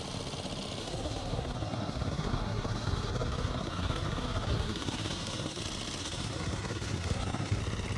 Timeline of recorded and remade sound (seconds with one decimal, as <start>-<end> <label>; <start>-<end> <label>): 0.0-0.8 recorded; 0.8-5.6 remade; 5.6-6.0 recorded; 6.0-7.6 remade; 7.6-8.0 recorded